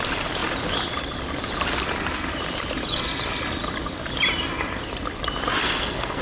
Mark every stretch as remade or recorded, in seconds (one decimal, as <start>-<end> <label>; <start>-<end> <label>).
0.0-5.6 recorded; 5.6-6.2 remade

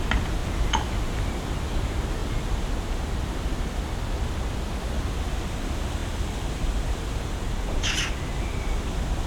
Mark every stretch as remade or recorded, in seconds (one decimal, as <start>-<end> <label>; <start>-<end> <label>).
0.0-0.4 recorded; 0.4-1.0 remade; 1.0-2.2 recorded; 2.2-4.4 remade; 4.4-9.3 recorded

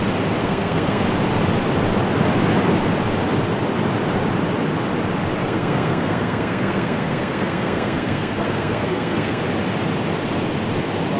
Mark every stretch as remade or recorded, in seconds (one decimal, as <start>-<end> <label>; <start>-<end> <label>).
0.0-0.4 recorded; 0.4-1.0 remade; 1.0-5.4 recorded; 5.4-9.4 remade; 9.4-11.2 recorded

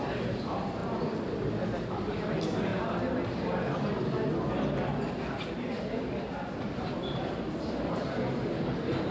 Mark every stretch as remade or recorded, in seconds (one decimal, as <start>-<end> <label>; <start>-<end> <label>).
0.0-2.7 remade; 2.7-5.8 recorded; 5.8-9.1 remade

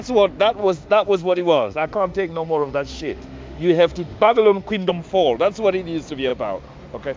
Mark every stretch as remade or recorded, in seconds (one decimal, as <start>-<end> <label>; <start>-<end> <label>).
0.0-0.6 recorded; 0.6-4.9 remade; 4.9-7.2 recorded

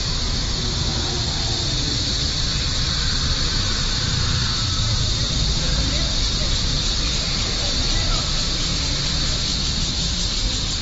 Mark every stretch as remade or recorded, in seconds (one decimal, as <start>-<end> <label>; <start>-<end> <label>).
0.0-6.7 recorded; 6.7-9.6 remade; 9.6-10.8 recorded

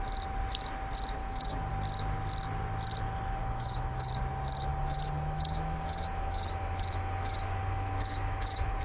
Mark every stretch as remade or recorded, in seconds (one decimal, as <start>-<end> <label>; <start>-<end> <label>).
0.0-1.2 recorded; 1.2-1.7 remade; 1.7-3.4 recorded; 3.4-4.1 remade; 4.1-4.7 recorded; 4.7-8.8 remade